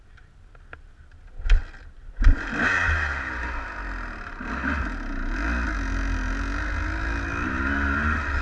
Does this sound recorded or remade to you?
recorded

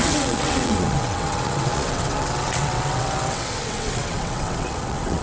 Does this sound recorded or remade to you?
remade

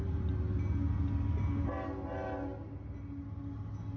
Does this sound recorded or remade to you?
recorded